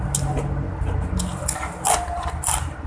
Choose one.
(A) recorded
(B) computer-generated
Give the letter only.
A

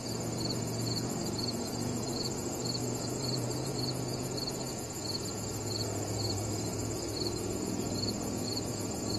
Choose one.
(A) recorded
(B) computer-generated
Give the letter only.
B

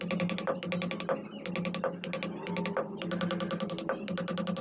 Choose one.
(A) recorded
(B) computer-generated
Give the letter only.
A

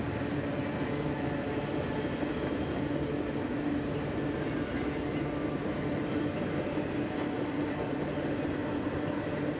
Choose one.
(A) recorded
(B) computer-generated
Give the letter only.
A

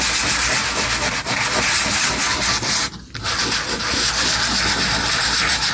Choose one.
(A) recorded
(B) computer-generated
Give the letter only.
A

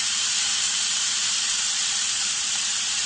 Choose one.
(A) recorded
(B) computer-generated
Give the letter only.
B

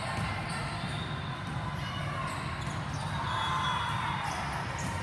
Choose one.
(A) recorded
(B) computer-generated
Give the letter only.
A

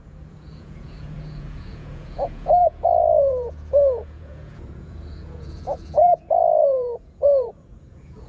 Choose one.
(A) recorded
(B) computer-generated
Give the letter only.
B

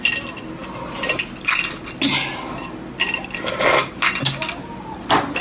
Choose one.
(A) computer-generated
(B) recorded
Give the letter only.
B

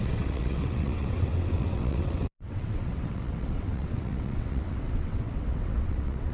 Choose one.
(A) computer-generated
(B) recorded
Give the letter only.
A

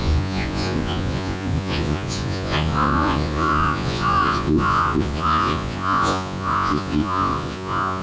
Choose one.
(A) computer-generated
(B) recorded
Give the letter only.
A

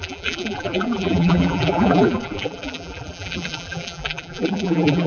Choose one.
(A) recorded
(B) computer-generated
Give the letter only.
B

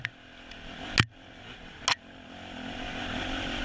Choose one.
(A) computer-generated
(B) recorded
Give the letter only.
B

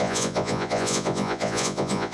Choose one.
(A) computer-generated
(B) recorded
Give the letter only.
A